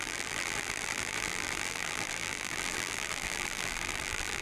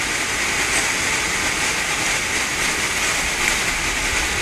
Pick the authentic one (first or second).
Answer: second